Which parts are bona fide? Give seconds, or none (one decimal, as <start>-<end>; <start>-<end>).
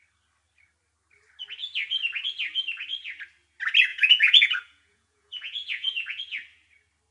0.0-3.9; 6.2-7.1